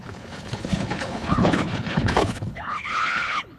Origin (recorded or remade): remade